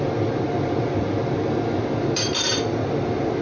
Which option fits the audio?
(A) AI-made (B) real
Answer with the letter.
B